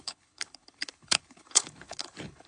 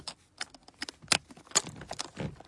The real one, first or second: second